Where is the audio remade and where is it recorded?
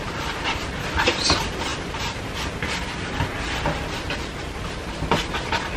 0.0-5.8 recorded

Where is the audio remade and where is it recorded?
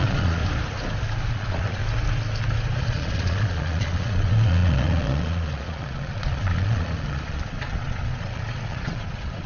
0.0-0.4 remade; 0.4-1.3 recorded; 1.3-1.8 remade; 1.8-2.8 recorded; 2.8-9.5 remade